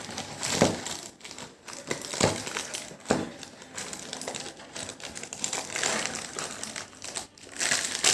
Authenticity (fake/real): real